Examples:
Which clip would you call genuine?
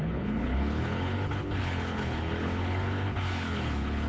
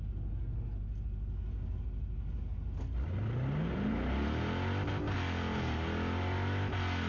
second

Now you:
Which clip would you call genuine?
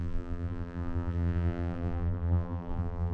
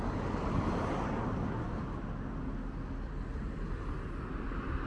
second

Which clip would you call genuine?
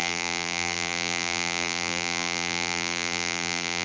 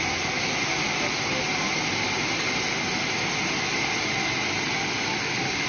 second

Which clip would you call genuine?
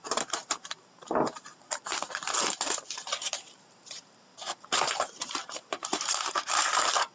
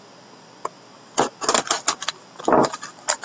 second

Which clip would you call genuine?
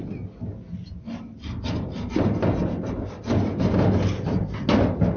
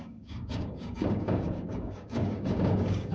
first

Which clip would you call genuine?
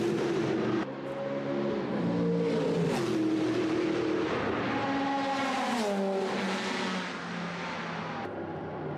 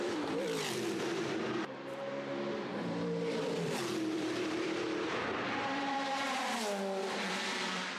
first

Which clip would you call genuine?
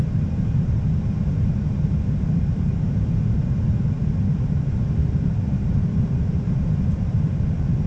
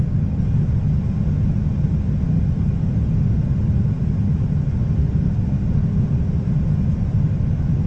second